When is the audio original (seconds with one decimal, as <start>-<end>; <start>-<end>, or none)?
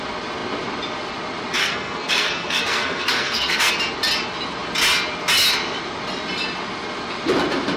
0.0-1.6; 3.7-7.8